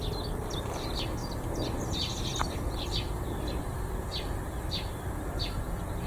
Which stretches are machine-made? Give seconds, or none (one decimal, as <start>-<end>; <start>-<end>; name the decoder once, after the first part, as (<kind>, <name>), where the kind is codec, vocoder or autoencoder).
none